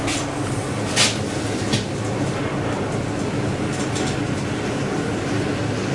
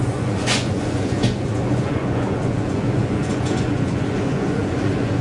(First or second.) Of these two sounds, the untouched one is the first